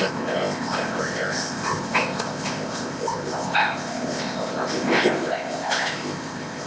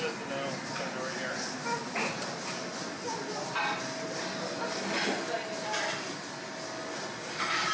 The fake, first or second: first